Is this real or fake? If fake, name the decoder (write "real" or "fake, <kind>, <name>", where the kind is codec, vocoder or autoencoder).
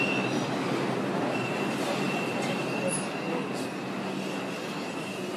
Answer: real